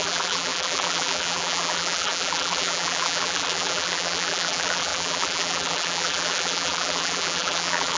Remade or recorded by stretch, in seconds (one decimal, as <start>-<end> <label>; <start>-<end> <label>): 0.0-8.0 remade